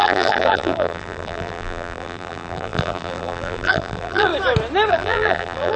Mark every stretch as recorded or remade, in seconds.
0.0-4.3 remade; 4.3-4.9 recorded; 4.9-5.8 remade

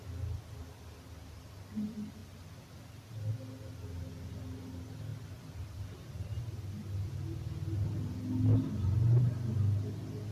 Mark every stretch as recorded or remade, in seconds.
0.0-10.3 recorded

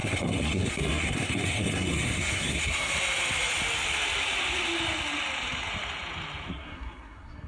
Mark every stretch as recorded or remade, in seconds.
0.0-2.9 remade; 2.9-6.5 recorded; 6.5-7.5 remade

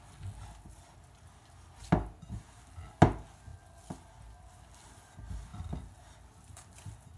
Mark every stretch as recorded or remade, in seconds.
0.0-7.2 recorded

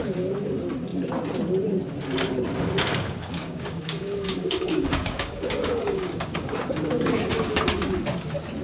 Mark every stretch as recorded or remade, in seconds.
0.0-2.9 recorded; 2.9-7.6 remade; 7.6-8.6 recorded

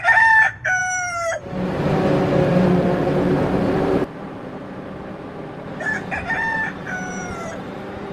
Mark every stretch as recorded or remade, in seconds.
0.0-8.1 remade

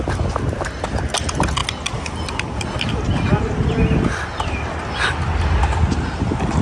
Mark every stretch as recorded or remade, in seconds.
0.0-6.6 recorded